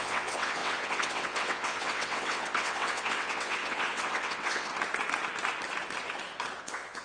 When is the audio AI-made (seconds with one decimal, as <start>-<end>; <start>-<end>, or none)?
0.0-4.7; 6.6-7.0